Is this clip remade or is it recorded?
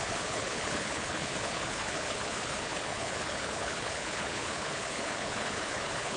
remade